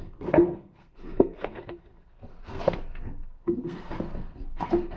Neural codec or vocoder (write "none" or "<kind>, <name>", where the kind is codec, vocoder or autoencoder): codec, SNAC